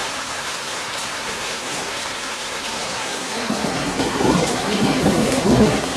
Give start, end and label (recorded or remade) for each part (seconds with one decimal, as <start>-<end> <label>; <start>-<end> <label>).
0.0-6.0 remade